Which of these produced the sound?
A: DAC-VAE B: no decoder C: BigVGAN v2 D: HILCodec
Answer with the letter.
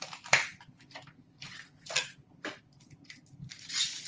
B